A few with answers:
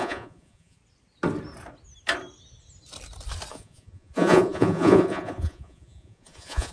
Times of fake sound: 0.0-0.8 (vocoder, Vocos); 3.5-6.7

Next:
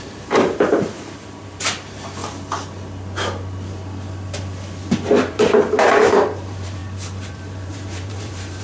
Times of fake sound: 0.0-2.2 (vocoder, BigVGAN v2); 5.1-6.8; 7.3-8.6

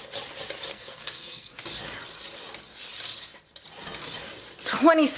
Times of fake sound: 0.7-1.5 (codec, SNAC)

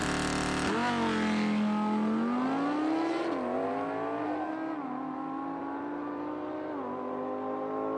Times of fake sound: 5.6-6.3 (vocoder, BigVGAN v2)

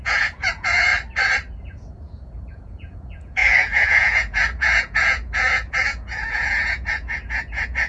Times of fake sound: 0.0-0.9 (vocoder, Vocos); 1.6-7.9

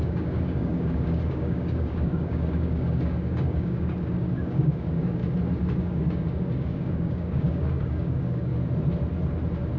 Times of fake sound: 0.0-5.2 (codec, DAC); 5.8-8.5

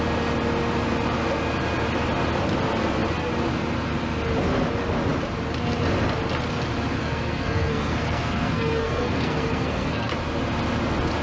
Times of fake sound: 7.0-10.1 (codec, SNAC)